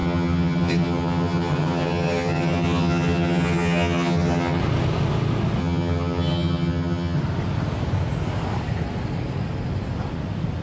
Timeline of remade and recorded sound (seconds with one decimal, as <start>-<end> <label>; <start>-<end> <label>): 0.0-4.6 remade; 4.6-5.6 recorded; 5.6-7.2 remade; 7.2-10.6 recorded